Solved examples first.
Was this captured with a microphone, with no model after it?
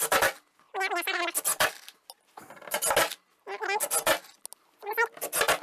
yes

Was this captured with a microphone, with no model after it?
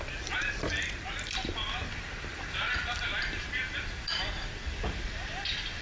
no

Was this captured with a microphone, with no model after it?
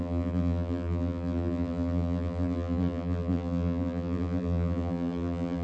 no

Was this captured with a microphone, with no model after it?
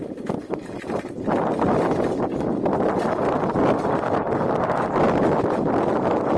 yes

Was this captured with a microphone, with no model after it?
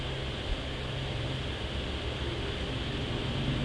yes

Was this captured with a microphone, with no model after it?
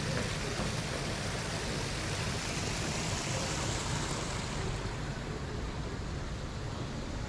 yes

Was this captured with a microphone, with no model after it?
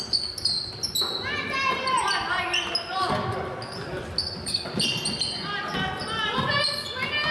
yes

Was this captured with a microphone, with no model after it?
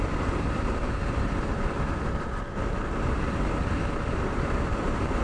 no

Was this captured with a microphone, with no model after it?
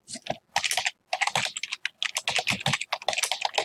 yes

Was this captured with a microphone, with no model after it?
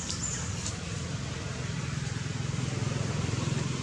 yes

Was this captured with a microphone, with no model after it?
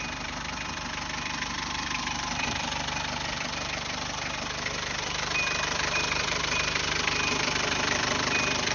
no